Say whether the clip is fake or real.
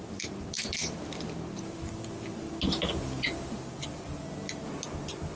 real